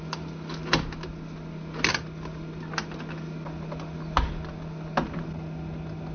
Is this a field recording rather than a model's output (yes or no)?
yes